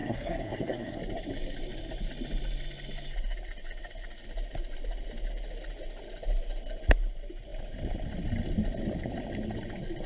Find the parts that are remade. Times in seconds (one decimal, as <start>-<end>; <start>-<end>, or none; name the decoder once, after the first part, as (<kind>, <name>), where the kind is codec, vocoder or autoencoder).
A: 0.0-1.0 (codec, SNAC)